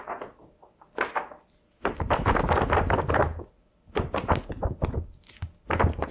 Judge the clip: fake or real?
real